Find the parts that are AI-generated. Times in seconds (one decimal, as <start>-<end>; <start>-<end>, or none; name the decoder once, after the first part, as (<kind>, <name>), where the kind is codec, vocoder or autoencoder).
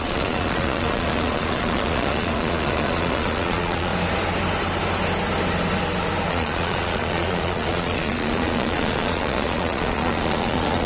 0.0-3.9 (vocoder, Vocos); 6.3-10.9